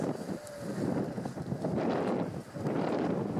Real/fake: real